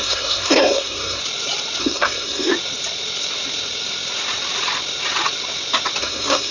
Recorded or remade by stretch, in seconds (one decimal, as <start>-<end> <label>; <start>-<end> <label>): 0.0-1.2 remade; 1.2-1.8 recorded; 1.8-2.5 remade; 2.5-6.0 recorded; 6.0-6.5 remade